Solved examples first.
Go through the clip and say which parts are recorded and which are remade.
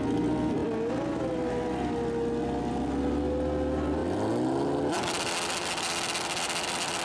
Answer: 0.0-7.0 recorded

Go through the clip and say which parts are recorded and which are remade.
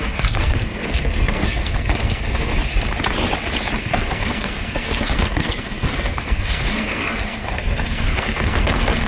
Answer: 0.0-2.5 remade; 2.5-3.8 recorded; 3.8-9.1 remade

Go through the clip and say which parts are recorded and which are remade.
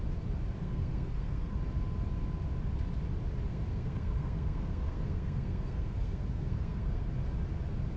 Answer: 0.0-0.6 recorded; 0.6-1.6 remade; 1.6-3.5 recorded; 3.5-7.1 remade; 7.1-8.0 recorded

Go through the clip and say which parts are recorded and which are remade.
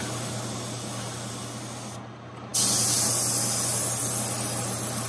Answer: 0.0-5.1 recorded